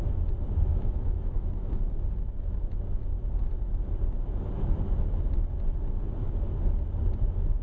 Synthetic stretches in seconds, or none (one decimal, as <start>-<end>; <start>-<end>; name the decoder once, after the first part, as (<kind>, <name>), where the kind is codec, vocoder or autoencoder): 0.7-1.9 (autoencoder, DAC-VAE)